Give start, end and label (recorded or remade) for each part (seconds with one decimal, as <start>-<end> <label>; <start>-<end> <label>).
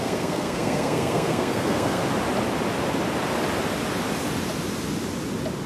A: 0.0-2.0 remade; 2.0-5.7 recorded